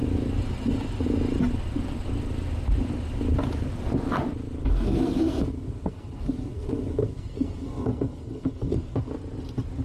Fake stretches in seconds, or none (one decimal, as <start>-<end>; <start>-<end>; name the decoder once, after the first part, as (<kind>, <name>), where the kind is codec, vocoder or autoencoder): 4.6-9.1 (codec, SNAC)